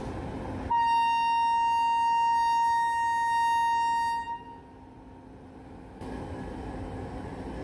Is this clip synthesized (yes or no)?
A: no